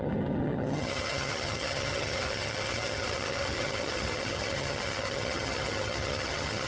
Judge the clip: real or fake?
fake